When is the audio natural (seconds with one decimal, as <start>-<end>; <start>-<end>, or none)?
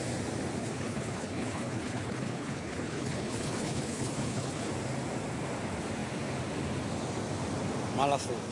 0.0-0.6; 4.7-8.5